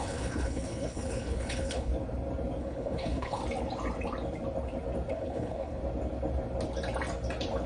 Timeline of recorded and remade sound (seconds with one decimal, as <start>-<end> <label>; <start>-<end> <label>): 0.0-1.9 remade; 1.9-2.6 recorded; 2.6-3.4 remade; 3.4-5.1 recorded; 5.1-5.8 remade; 5.8-7.7 recorded